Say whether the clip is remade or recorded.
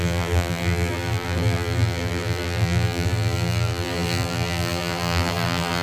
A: remade